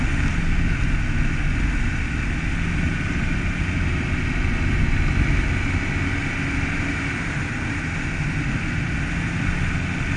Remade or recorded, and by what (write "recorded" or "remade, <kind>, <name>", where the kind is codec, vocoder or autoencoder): recorded